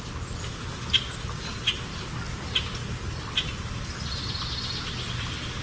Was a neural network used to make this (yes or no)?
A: no